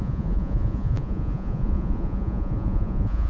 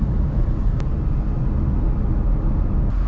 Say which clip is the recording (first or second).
second